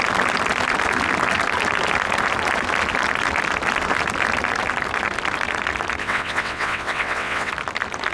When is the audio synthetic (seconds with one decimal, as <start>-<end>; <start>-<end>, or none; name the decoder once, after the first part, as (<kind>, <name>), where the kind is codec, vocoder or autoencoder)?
6.0-7.5 (vocoder, WaveNeXt)